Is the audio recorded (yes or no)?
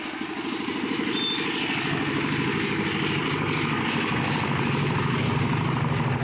yes